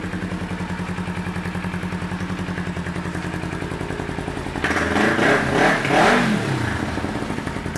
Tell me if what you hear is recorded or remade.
recorded